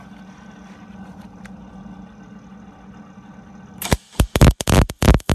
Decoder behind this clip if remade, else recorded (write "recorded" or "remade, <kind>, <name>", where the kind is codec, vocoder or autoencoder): recorded